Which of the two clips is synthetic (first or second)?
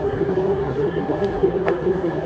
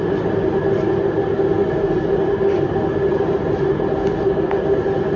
first